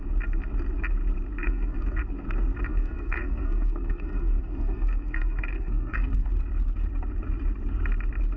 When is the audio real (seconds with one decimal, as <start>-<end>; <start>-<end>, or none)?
0.0-1.4; 2.0-2.7; 6.3-8.4